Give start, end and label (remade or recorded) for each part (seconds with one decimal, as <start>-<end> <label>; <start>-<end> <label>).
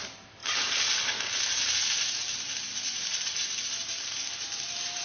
0.0-5.0 remade